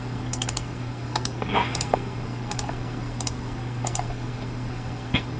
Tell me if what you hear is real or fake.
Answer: fake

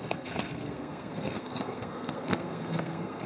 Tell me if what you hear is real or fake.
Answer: fake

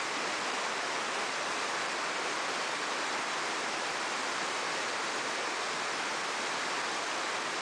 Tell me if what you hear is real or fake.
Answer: real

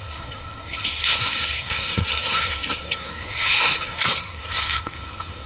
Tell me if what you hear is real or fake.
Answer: fake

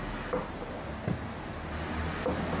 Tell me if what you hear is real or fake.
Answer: real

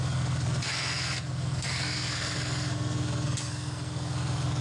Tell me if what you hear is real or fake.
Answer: fake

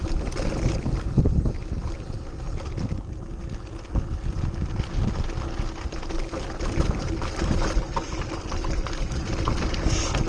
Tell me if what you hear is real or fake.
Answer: real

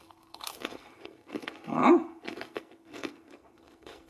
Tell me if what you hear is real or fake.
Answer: fake